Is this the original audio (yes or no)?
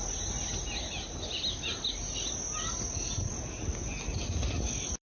yes